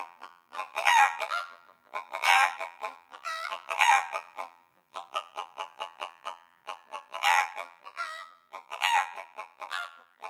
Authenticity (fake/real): fake